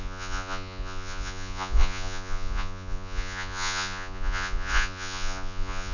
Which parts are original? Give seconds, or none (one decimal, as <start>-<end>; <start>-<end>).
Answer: none